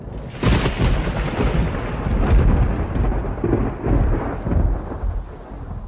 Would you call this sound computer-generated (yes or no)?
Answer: no